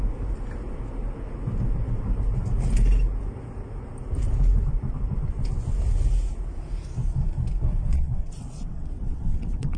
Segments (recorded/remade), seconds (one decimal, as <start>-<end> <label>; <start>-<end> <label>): 0.0-7.9 recorded; 7.9-9.8 remade